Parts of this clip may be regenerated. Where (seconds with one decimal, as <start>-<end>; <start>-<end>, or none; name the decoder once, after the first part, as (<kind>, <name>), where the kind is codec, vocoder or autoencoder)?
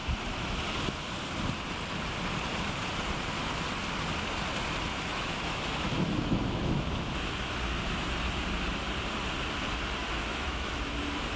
4.9-7.3 (autoencoder, DAC-VAE); 10.0-10.9